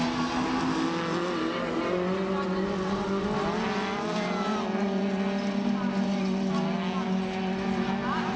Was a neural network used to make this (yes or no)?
no